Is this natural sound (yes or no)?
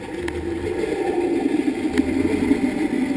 yes